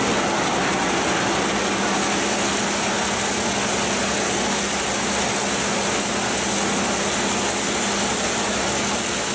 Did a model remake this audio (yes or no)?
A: no